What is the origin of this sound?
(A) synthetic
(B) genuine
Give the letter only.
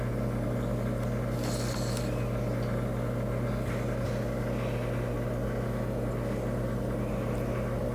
B